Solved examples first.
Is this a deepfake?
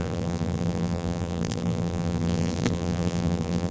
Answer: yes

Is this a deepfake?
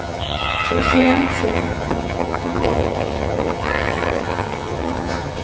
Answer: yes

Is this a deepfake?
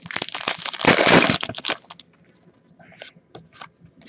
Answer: no